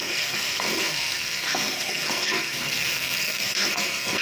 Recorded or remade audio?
remade